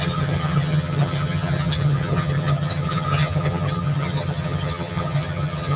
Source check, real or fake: fake